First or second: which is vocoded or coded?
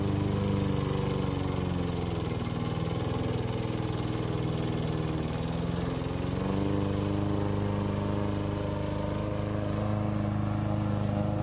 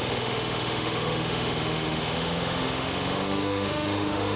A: second